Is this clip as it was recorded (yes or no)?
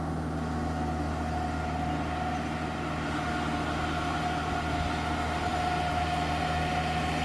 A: yes